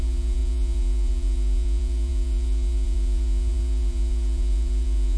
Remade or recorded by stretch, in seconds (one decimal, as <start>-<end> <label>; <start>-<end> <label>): 0.0-5.2 remade